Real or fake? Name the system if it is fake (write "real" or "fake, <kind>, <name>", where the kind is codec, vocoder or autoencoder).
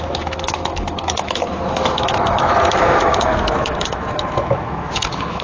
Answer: fake, autoencoder, DAC-VAE